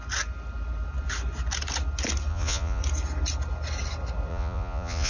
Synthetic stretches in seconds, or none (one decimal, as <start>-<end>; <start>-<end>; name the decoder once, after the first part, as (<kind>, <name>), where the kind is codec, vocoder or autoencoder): 2.3-2.8 (vocoder, Vocos); 4.3-5.1